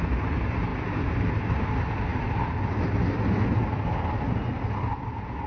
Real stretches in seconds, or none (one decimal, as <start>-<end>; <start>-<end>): 0.0-5.5

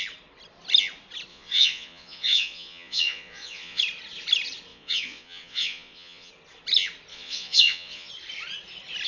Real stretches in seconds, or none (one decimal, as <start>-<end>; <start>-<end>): 0.0-1.3; 3.8-4.7; 6.3-7.1; 8.1-9.1

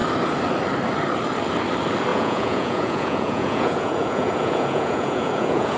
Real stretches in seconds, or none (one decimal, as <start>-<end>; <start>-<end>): 0.0-2.1

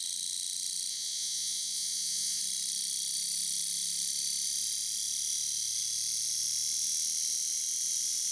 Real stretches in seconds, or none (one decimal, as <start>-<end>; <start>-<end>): 0.0-0.9; 2.4-8.3

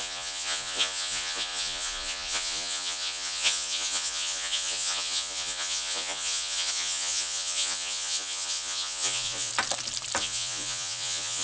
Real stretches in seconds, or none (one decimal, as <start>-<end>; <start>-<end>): 9.5-10.2

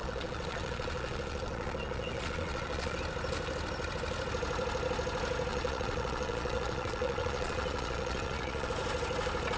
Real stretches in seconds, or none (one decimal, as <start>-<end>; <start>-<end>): 3.0-5.5; 8.7-9.6

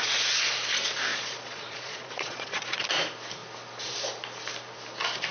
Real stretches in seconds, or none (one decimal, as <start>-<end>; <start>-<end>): 0.0-1.1; 2.8-5.3